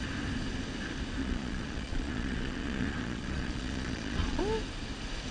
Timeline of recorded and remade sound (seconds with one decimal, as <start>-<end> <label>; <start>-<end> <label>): 0.0-1.2 recorded; 1.2-4.4 remade; 4.4-5.3 recorded